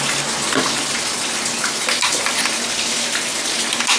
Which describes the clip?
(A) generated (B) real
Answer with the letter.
B